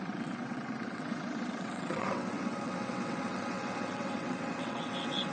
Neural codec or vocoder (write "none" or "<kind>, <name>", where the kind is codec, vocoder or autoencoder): vocoder, WaveNeXt